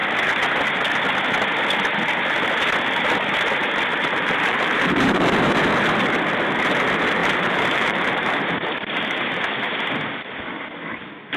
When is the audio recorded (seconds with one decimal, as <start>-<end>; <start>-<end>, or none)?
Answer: 0.0-3.9; 5.5-7.2; 8.3-11.4